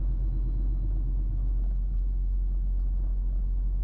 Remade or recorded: recorded